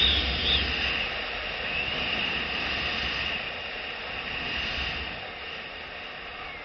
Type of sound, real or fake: real